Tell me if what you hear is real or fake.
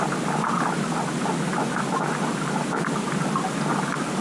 real